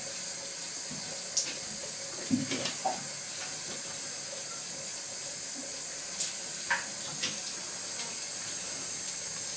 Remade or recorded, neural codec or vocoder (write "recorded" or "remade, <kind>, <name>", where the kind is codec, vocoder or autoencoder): recorded